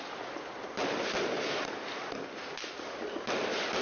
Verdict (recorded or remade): recorded